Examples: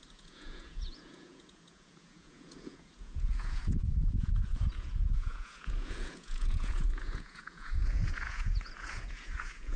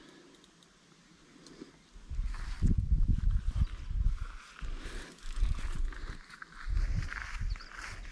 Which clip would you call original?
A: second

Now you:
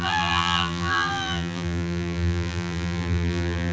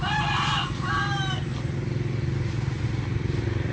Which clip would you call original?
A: second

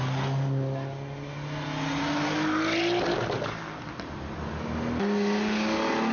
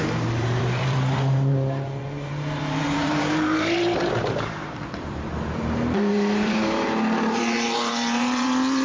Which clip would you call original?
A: first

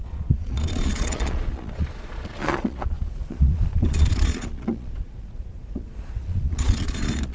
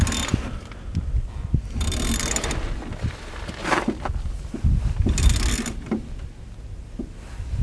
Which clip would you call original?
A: second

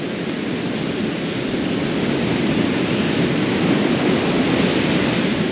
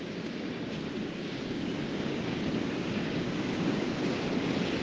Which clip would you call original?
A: first